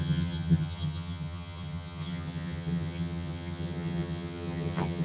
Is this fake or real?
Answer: fake